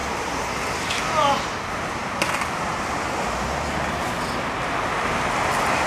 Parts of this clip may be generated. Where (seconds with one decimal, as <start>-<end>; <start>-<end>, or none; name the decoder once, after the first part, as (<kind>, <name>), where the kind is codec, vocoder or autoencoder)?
0.0-0.5 (vocoder, BigVGAN v2)